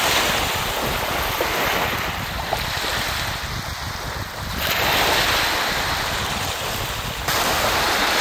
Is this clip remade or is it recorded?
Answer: recorded